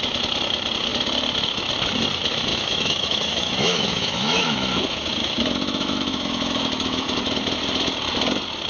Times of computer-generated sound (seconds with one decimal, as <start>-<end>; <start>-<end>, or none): 2.5-7.2